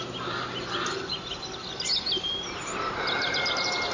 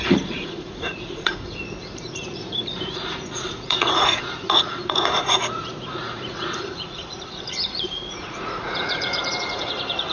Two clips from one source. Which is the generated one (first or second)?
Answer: second